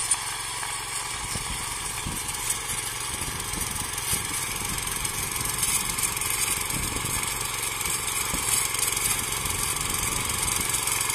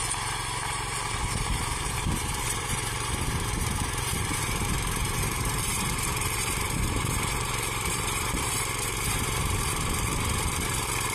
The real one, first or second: first